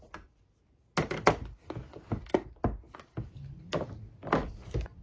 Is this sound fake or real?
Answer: real